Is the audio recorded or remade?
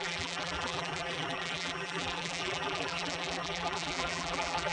remade